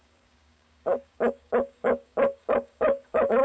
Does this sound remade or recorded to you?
remade